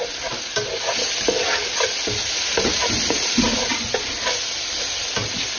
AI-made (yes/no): no